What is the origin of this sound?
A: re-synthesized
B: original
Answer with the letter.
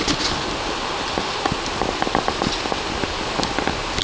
B